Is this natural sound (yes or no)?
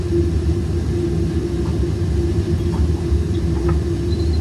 yes